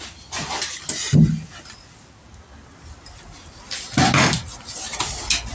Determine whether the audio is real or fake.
real